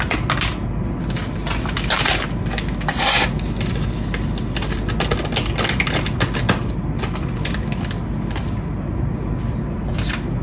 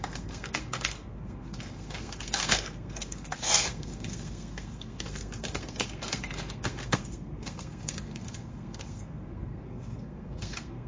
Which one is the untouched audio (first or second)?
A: first